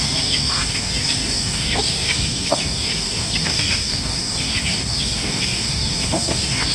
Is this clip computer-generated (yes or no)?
yes